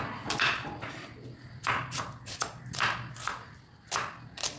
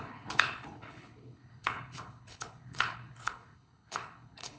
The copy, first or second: second